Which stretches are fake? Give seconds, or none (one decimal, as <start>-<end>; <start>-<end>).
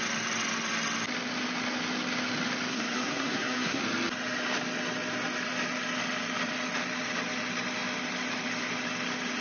2.7-3.8